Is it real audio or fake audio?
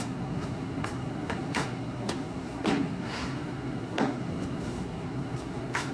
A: fake